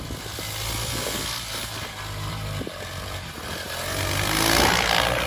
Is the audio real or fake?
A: real